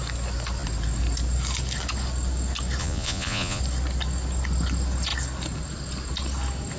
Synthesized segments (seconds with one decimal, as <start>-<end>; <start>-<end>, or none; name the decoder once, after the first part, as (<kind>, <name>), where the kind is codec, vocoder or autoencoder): 2.8-3.6 (vocoder, Vocos)